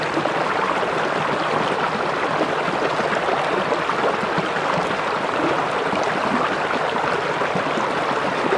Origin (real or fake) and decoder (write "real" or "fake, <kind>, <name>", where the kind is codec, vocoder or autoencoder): real